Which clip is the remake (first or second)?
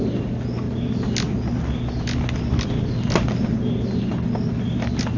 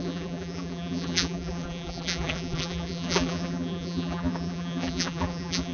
second